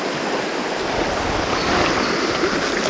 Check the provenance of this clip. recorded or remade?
recorded